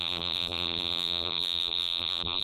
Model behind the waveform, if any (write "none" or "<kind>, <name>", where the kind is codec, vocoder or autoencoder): vocoder, BigVGAN v2